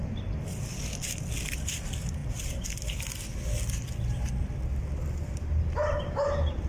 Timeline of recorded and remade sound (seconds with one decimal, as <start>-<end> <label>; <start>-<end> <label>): 0.0-6.7 recorded